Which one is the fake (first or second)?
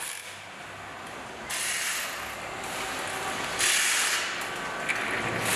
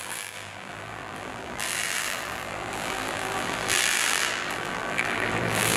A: second